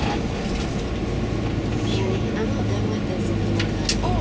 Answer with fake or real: real